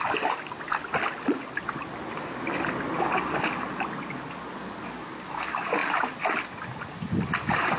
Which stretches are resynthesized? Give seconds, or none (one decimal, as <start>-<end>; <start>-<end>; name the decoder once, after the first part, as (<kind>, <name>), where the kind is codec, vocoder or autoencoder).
none

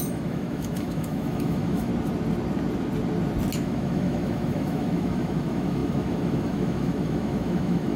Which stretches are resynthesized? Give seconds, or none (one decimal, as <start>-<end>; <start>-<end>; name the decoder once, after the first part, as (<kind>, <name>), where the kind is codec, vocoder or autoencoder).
0.0-1.9 (autoencoder, DAC-VAE); 3.6-8.0

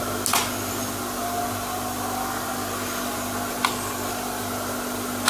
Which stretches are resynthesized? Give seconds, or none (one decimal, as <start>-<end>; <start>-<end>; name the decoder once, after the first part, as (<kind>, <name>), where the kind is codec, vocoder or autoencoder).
none

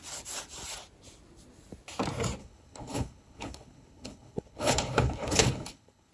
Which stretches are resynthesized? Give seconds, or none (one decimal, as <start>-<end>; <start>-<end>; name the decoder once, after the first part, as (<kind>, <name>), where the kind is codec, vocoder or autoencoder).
2.4-6.1 (codec, HILCodec)

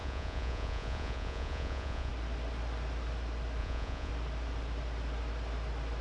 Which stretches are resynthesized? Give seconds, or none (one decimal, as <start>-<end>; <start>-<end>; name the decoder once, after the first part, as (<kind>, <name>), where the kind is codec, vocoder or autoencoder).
0.0-2.1 (vocoder, Vocos); 3.6-4.1

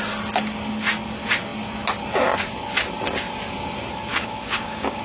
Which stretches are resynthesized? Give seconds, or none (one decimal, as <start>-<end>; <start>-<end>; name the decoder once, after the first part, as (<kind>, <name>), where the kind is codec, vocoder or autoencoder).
4.1-5.0 (codec, DAC)